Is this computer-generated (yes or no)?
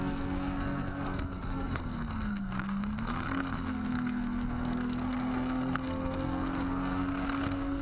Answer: yes